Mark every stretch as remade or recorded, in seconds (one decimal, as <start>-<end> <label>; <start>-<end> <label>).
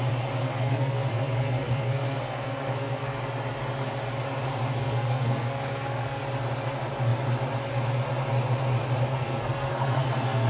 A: 0.0-0.4 recorded; 0.4-3.2 remade; 3.2-4.8 recorded; 4.8-6.2 remade; 6.2-9.1 recorded; 9.1-10.5 remade